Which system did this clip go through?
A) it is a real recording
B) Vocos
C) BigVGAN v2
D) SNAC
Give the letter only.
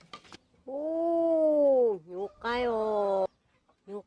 A